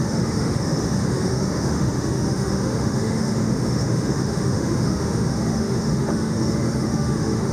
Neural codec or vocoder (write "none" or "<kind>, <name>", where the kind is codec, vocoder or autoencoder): autoencoder, DAC-VAE